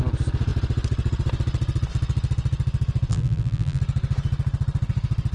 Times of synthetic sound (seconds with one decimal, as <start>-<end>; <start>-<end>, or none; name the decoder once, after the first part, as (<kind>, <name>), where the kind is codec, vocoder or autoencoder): 3.1-3.8 (vocoder, BigVGAN v2)